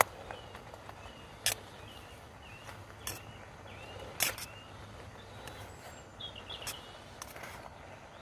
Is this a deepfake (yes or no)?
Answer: no